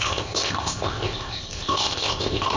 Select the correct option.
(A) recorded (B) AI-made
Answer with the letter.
B